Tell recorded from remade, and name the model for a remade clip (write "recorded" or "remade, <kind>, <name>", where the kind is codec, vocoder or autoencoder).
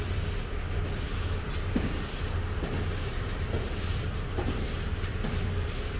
remade, vocoder, BigVGAN v2